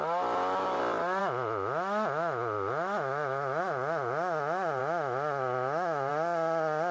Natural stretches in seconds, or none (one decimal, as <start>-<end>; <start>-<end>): 0.0-1.2; 3.6-4.8; 6.1-6.9

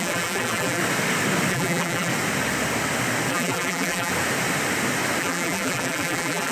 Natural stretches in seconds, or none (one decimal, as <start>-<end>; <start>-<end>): 0.8-1.5; 2.1-3.3; 4.1-5.2

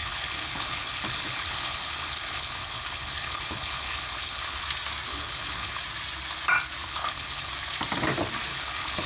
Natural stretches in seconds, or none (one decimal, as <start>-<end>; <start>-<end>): 4.6-5.1; 5.8-6.8; 7.5-8.5

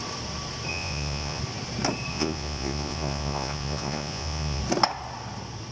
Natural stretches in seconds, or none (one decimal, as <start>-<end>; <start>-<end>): 0.0-0.7; 1.4-2.1; 4.6-5.7